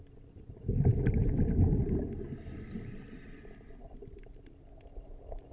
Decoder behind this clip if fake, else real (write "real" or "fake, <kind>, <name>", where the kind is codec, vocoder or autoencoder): real